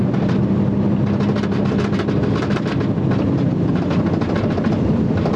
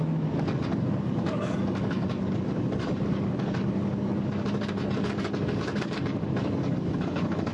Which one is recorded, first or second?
first